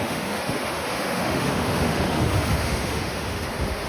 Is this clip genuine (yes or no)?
no